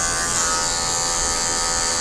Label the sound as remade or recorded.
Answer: recorded